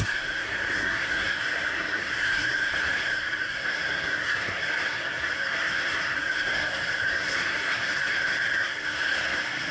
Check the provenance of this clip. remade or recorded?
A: remade